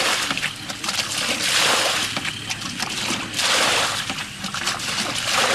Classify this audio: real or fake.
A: real